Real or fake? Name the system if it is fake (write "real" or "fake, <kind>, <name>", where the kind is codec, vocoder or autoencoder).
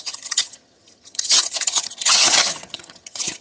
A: fake, vocoder, HiFi-GAN